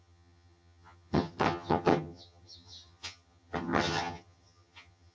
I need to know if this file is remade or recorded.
remade